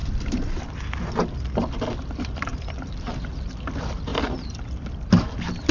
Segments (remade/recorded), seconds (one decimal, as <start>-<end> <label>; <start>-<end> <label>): 0.0-0.6 remade; 0.6-4.1 recorded; 4.1-4.9 remade; 4.9-5.7 recorded